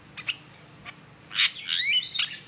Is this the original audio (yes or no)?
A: yes